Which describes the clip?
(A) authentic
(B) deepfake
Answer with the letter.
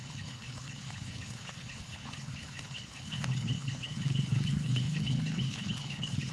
B